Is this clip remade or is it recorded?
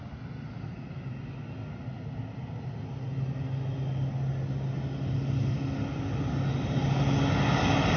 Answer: recorded